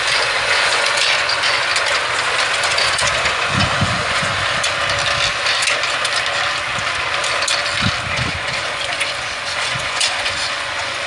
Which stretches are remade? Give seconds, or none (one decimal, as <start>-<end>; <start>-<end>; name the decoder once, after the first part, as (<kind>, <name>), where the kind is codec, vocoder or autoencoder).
0.0-1.7 (vocoder, Vocos); 2.7-4.3; 8.1-11.1